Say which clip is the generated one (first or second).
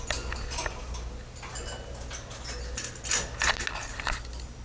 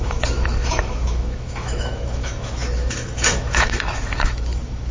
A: second